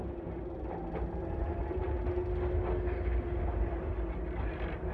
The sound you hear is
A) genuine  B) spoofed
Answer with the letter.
A